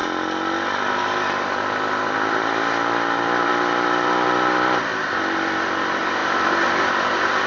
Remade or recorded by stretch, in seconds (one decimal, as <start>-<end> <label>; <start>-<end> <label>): 0.0-3.5 recorded; 3.5-7.5 remade